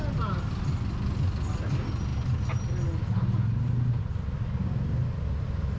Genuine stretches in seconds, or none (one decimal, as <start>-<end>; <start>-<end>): 0.0-5.8